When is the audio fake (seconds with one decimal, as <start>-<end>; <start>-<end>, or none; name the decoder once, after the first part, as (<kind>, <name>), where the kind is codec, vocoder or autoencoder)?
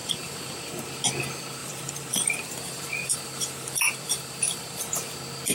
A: 0.0-0.5 (vocoder, BigVGAN v2); 1.6-4.9